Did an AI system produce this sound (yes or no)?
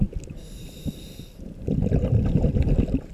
no